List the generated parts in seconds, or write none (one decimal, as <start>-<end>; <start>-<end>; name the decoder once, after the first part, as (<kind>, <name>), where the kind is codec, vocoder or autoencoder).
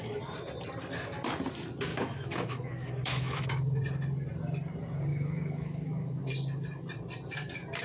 1.9-3.8 (autoencoder, DAC-VAE); 5.1-6.2